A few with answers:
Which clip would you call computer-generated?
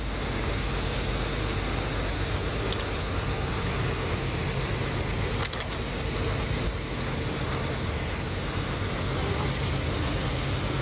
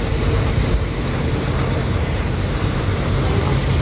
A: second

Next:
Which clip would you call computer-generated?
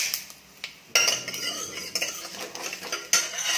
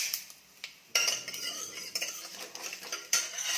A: second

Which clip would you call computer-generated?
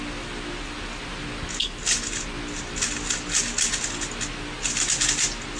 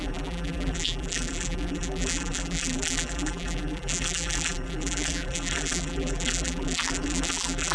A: second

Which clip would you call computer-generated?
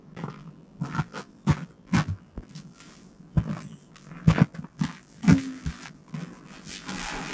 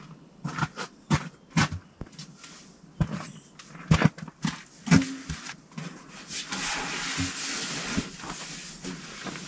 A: first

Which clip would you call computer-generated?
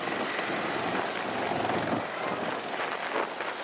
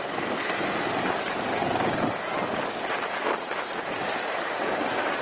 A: second